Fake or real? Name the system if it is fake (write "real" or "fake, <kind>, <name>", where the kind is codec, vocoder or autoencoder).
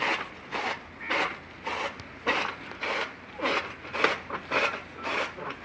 real